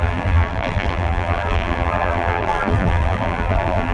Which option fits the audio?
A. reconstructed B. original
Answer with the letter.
A